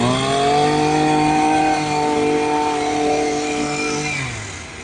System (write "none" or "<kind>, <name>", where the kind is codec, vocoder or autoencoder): none